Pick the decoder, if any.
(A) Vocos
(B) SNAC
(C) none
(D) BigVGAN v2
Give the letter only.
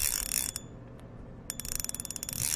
C